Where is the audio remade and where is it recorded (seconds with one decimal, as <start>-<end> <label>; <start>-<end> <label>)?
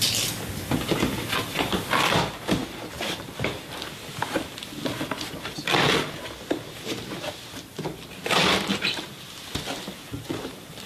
0.0-10.9 recorded